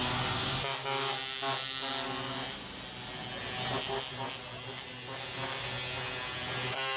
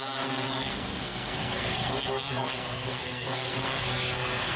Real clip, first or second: first